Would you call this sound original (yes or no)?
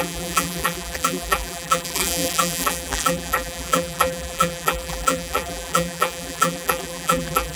no